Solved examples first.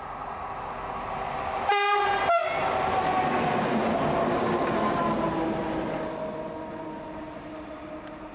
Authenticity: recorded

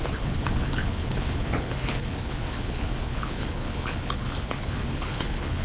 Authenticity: remade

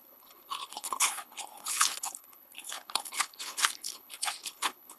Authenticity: remade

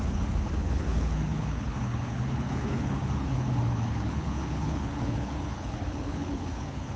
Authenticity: remade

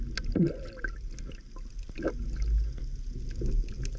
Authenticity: recorded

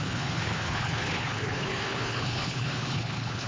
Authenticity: remade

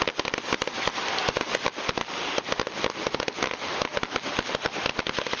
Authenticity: recorded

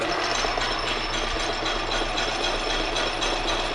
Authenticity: recorded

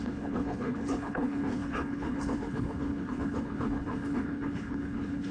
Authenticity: remade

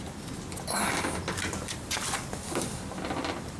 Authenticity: recorded